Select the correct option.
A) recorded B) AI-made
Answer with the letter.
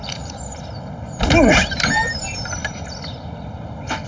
A